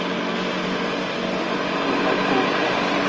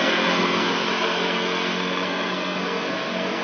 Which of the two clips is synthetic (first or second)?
second